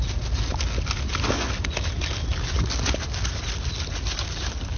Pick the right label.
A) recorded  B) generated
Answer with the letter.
A